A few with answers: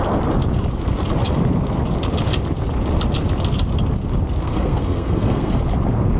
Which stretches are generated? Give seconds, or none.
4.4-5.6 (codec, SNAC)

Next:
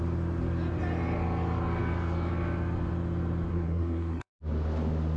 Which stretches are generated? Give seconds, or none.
3.5-4.3 (codec, SNAC)

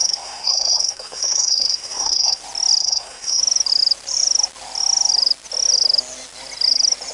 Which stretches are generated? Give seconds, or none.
0.0-2.4 (codec, SNAC); 2.8-3.4

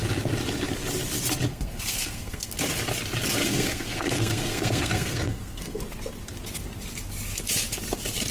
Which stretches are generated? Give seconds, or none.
1.5-2.5 (codec, SNAC); 3.4-5.8

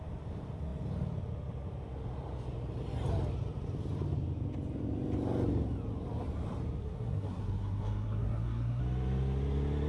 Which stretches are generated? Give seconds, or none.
6.8-8.8 (codec, SNAC)

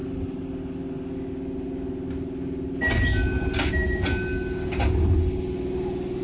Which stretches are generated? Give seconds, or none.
none

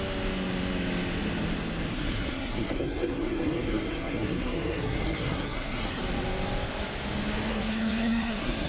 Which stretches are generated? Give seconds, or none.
1.9-6.0 (codec, SNAC); 7.5-8.7

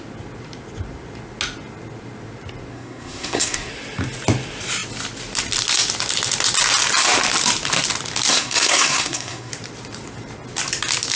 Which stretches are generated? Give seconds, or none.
2.7-3.7 (codec, SNAC); 8.3-9.5